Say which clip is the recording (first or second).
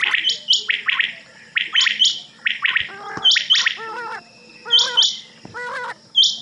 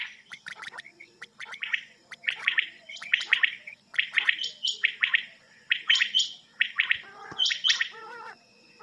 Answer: first